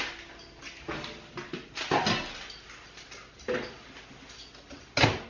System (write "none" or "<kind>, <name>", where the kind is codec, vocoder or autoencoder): none